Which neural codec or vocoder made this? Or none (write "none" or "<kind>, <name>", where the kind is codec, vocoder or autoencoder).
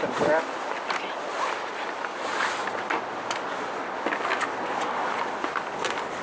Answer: none